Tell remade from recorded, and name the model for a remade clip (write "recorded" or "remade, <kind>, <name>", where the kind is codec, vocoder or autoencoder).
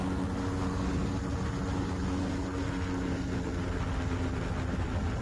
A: recorded